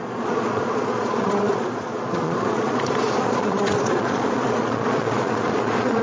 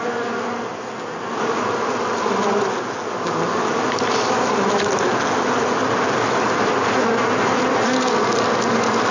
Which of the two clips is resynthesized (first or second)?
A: first